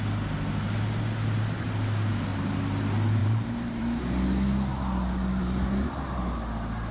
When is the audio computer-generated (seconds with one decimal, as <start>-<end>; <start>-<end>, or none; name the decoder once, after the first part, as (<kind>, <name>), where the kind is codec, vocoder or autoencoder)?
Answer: 2.3-2.8 (vocoder, BigVGAN v2); 3.2-4.0; 5.4-5.9